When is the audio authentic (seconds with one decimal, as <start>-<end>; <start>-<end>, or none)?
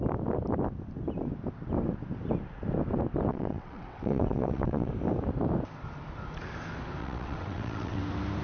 0.0-3.3; 4.9-7.0; 8.0-8.4